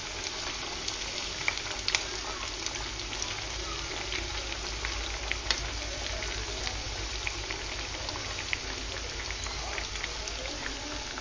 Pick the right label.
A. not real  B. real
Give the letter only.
B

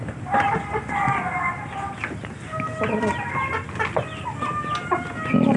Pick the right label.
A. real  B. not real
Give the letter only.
A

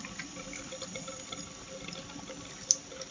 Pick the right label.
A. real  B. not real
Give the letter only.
A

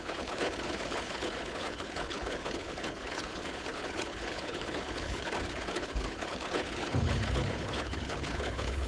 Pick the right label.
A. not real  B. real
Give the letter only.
A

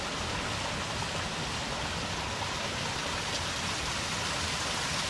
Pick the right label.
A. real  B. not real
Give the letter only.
A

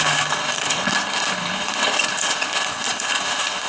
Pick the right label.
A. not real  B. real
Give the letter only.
A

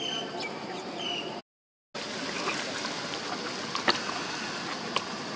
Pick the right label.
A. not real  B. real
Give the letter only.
B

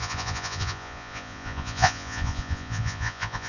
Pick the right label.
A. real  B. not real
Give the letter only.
B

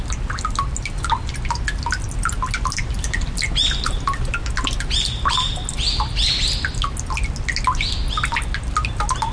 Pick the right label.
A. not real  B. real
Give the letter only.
B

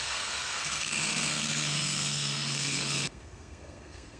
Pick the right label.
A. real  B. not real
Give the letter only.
B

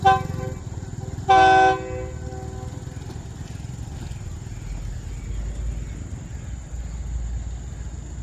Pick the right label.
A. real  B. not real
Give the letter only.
A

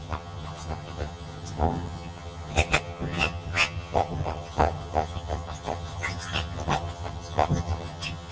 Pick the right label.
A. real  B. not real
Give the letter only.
B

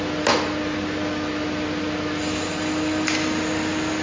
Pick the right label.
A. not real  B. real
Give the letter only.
B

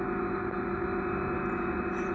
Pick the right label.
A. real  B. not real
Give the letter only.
A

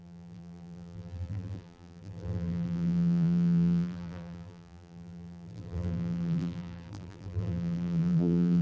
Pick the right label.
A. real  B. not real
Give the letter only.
B